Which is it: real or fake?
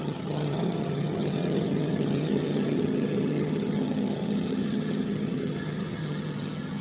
fake